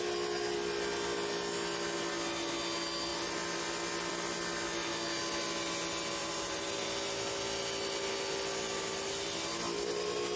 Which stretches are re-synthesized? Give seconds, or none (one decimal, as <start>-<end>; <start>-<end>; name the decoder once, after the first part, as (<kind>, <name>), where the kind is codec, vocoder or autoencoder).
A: 6.2-6.7 (vocoder, BigVGAN v2)